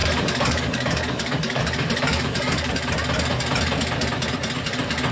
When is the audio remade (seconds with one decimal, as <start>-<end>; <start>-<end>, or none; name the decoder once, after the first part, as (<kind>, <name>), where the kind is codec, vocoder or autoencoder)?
0.0-2.7 (codec, DAC)